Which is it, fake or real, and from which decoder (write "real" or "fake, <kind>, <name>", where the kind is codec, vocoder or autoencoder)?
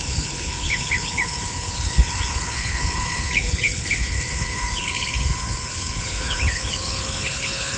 fake, codec, HILCodec